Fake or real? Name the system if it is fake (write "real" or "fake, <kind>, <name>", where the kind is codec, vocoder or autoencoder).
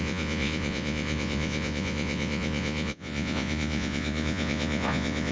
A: fake, vocoder, Vocos